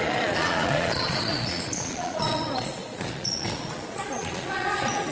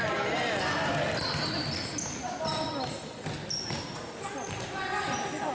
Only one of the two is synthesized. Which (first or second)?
first